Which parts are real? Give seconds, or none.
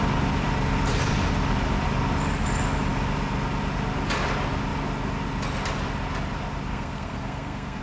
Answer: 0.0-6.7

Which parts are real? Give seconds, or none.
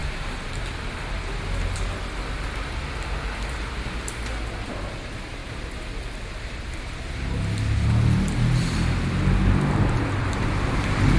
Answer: 0.0-5.4; 6.8-11.2